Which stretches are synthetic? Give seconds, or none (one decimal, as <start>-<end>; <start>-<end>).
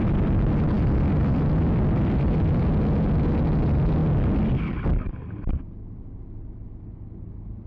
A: none